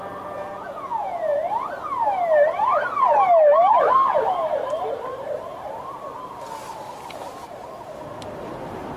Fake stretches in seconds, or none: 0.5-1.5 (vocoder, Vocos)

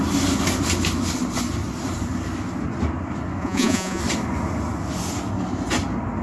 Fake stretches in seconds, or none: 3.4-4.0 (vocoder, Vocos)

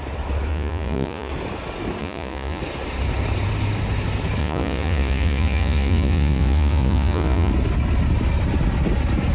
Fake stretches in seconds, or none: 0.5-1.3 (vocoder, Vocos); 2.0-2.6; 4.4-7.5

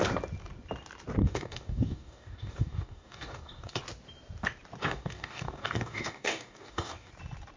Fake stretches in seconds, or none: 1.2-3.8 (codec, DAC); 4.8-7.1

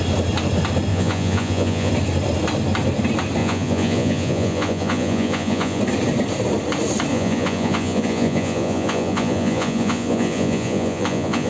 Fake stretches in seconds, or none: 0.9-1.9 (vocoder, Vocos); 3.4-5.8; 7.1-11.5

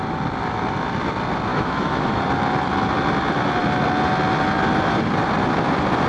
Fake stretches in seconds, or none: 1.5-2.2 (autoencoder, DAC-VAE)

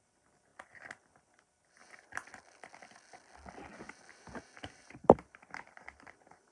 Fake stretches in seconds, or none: none

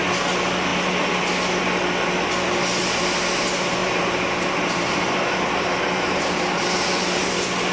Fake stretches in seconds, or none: 3.8-7.3 (vocoder, BigVGAN v2)